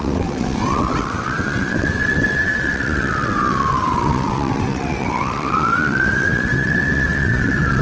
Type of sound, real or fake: fake